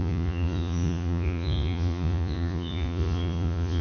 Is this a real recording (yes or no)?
no